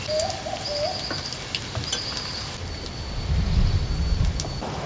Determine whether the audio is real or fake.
real